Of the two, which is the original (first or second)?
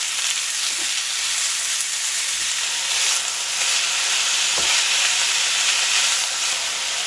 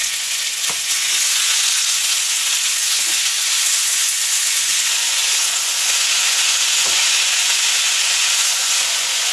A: first